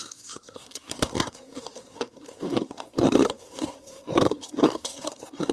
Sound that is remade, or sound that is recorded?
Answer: remade